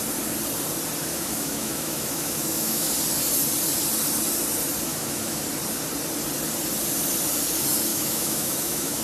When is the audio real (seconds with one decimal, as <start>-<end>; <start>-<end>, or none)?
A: 0.0-1.1; 2.9-4.9; 5.4-7.9